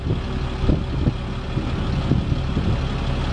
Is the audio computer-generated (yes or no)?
no